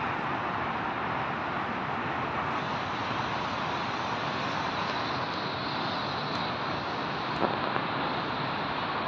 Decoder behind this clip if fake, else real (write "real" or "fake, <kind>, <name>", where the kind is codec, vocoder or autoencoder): real